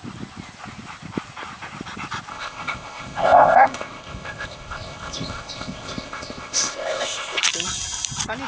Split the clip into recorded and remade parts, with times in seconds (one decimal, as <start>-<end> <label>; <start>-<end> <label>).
0.0-2.3 recorded; 2.3-7.4 remade; 7.4-8.5 recorded